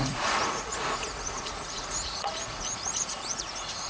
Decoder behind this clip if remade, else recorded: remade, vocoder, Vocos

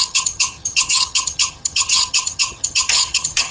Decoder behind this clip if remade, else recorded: remade, vocoder, HiFi-GAN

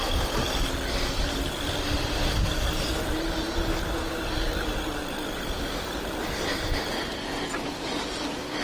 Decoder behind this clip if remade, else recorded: recorded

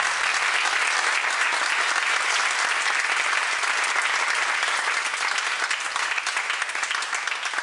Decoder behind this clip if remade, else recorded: recorded